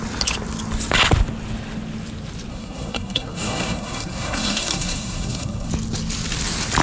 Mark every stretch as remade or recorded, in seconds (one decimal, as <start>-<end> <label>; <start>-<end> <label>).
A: 0.0-2.5 recorded; 2.5-5.7 remade; 5.7-6.8 recorded